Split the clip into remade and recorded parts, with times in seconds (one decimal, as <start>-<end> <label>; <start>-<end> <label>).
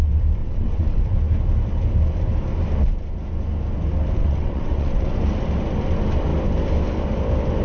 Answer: 0.0-0.4 recorded; 0.4-1.0 remade; 1.0-4.2 recorded; 4.2-5.1 remade; 5.1-7.6 recorded